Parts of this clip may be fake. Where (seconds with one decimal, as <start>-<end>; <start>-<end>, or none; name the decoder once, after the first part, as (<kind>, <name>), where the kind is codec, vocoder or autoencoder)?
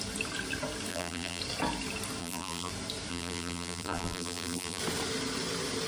0.9-1.4 (vocoder, BigVGAN v2); 2.2-2.7; 3.1-4.8